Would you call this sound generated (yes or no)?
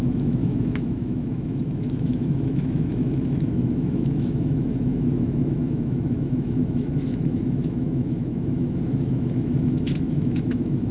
yes